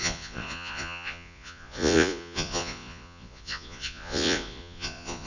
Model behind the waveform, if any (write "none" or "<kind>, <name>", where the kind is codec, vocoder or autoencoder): vocoder, Vocos